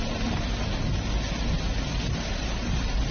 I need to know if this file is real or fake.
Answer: real